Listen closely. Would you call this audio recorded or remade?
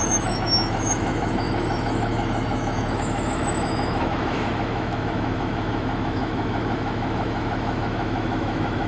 remade